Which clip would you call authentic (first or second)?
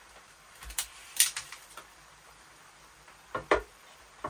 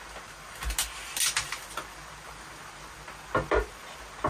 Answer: second